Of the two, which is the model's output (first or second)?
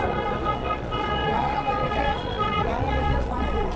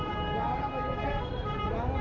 first